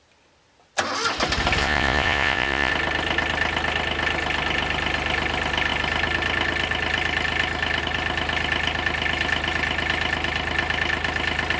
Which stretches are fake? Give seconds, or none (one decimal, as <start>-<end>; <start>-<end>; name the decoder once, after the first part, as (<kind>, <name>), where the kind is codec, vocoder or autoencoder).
1.6-2.7 (vocoder, Vocos)